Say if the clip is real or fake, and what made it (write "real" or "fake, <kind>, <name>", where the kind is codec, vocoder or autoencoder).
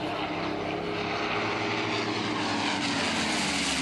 real